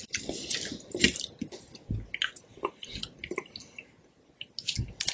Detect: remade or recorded recorded